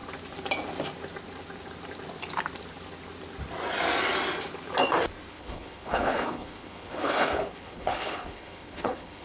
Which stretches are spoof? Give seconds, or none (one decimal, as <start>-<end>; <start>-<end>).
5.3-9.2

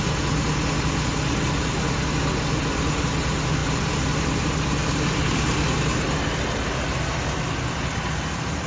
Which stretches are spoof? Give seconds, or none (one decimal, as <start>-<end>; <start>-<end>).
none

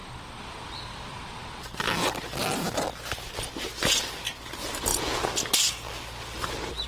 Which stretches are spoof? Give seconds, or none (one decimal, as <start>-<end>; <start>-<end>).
none